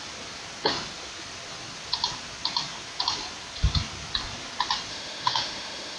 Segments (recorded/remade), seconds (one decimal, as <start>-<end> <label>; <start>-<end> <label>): 0.0-4.9 recorded; 4.9-6.0 remade